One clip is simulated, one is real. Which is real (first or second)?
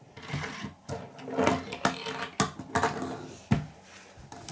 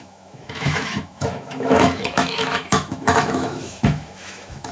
first